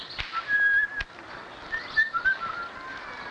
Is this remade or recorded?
recorded